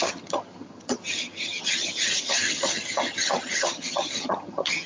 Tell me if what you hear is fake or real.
fake